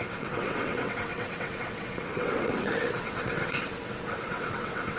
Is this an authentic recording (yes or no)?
no